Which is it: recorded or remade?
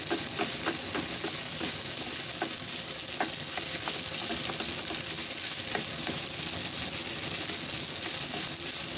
recorded